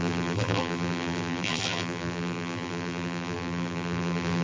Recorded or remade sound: remade